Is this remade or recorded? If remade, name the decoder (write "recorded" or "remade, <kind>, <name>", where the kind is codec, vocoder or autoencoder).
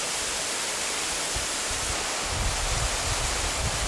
recorded